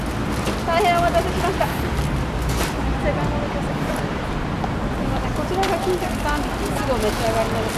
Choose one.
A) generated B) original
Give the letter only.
B